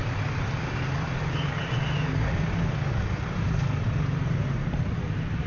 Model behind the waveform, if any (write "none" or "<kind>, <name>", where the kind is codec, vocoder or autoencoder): none